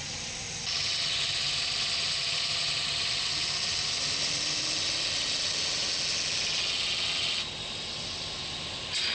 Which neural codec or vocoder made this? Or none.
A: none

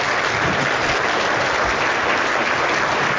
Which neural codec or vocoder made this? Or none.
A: none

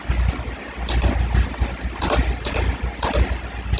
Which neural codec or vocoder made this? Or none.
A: none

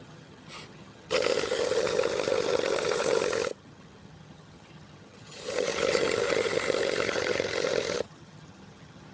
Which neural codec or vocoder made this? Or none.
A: vocoder, HiFi-GAN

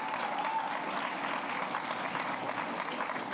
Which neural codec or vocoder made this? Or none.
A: none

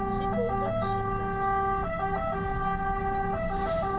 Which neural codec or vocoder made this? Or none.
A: none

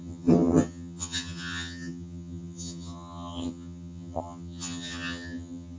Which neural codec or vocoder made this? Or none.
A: vocoder, HiFi-GAN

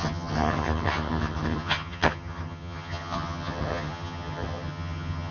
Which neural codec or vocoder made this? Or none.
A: vocoder, HiFi-GAN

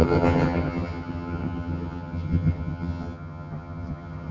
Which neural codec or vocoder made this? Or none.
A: vocoder, HiFi-GAN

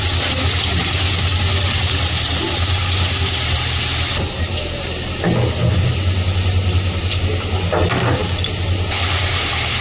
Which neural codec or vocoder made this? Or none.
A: none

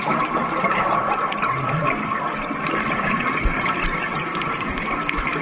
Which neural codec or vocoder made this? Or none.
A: none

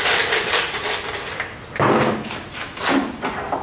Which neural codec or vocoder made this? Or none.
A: none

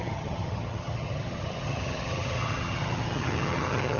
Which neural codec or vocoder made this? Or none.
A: vocoder, HiFi-GAN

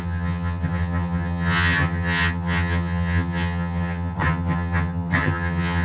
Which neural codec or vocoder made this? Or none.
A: vocoder, HiFi-GAN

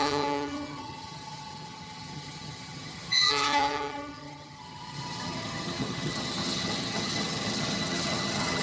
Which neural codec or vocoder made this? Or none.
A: vocoder, HiFi-GAN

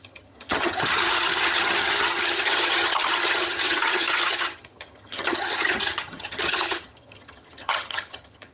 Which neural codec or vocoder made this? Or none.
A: vocoder, HiFi-GAN